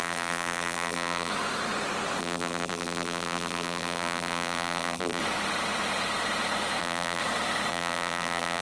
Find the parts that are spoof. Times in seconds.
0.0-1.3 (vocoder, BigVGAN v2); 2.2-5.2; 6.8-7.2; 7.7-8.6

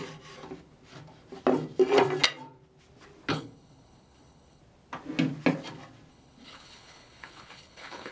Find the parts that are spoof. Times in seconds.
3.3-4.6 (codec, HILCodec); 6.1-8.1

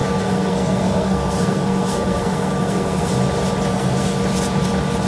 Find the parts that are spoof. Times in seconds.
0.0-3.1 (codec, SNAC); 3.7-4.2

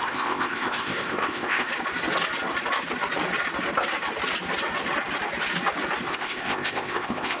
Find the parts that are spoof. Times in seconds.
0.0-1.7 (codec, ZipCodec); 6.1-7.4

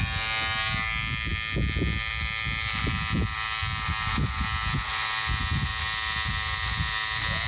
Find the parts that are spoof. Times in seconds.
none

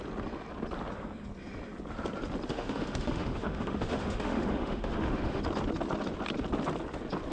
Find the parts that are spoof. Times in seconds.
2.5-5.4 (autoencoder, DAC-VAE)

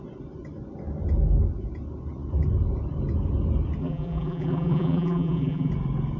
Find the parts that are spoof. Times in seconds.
3.8-5.7 (vocoder, BigVGAN v2)

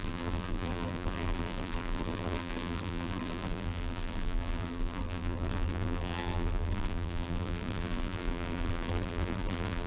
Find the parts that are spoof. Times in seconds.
0.0-9.9 (vocoder, BigVGAN v2)